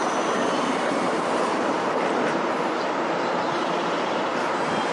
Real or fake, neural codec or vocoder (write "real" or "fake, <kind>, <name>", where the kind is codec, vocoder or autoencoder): fake, vocoder, BigVGAN v2